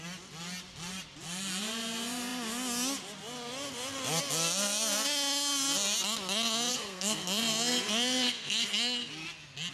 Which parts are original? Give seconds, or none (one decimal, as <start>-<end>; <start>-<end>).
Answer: 0.0-6.7; 9.1-9.7